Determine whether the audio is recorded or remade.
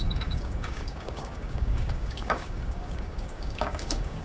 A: remade